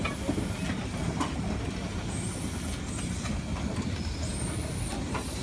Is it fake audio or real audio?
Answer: real